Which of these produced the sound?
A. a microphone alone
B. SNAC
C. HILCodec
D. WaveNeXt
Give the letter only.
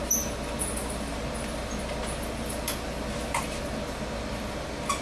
A